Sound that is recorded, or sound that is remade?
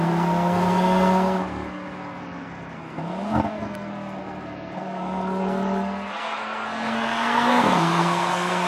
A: remade